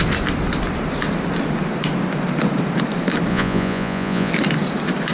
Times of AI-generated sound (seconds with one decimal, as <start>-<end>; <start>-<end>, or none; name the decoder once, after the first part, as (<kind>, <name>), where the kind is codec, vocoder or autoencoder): 3.3-4.3 (vocoder, Vocos)